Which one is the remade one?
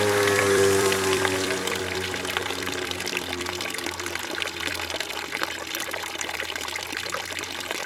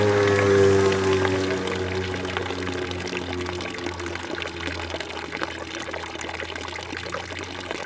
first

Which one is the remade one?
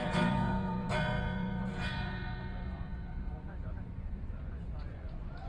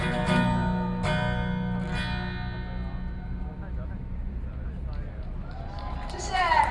first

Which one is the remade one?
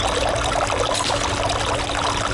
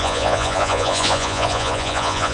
second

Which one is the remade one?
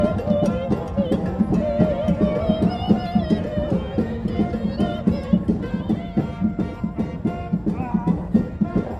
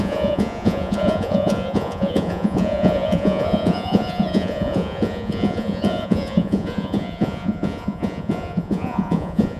second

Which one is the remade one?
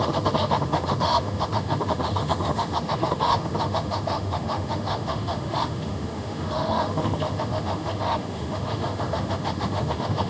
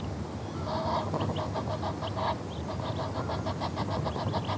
first